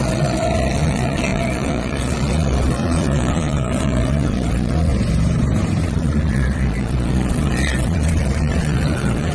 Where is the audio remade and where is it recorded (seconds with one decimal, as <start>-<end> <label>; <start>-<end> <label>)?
0.0-4.9 remade; 4.9-5.8 recorded; 5.8-9.3 remade